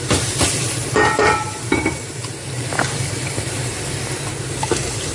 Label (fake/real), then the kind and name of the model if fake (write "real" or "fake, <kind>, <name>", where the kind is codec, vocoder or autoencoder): fake, vocoder, BigVGAN v2